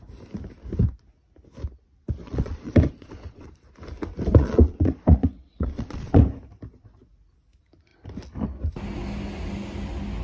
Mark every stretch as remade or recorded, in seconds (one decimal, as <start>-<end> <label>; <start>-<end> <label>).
0.0-2.2 recorded; 2.2-3.5 remade; 3.5-4.4 recorded; 4.4-6.2 remade; 6.2-10.2 recorded